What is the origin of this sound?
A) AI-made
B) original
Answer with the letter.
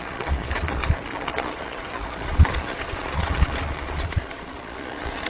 A